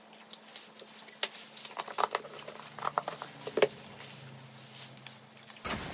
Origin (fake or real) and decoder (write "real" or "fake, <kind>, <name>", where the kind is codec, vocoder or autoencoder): real